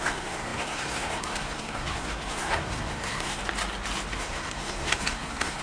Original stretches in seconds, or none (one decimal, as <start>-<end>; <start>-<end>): 3.4-4.1